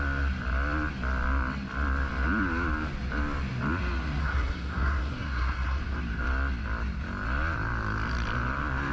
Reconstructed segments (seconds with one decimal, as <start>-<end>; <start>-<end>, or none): 4.2-5.8